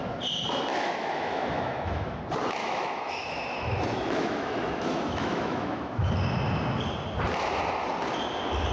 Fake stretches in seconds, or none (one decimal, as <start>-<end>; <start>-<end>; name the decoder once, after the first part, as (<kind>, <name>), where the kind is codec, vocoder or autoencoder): 0.7-2.2 (autoencoder, DAC-VAE); 2.6-6.1